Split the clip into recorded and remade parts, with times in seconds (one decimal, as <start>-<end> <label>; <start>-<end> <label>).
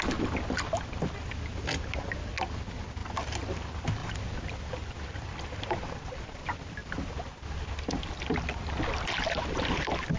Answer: 0.0-3.0 recorded; 3.0-3.5 remade; 3.5-4.0 recorded; 4.0-5.4 remade; 5.4-6.8 recorded; 6.8-7.7 remade; 7.7-10.2 recorded